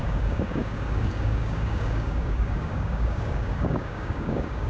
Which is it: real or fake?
fake